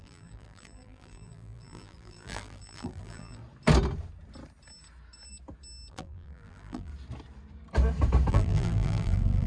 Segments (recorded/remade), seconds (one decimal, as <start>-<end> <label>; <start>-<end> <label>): 0.0-3.4 remade; 3.4-5.9 recorded; 5.9-6.9 remade; 6.9-8.3 recorded; 8.3-9.5 remade